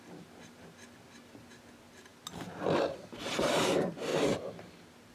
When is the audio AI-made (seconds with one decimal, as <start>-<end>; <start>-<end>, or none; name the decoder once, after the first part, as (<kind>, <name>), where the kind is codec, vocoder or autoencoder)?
none